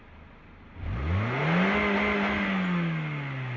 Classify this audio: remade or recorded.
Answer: recorded